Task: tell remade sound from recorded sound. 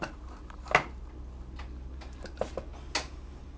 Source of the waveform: recorded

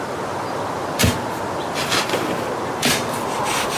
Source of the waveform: recorded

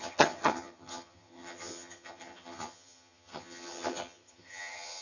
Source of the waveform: remade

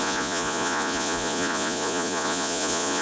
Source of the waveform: remade